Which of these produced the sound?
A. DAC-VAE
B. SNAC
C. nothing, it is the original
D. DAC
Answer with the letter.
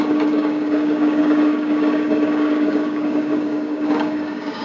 D